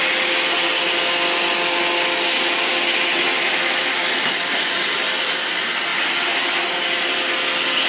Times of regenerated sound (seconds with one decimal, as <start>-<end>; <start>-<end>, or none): none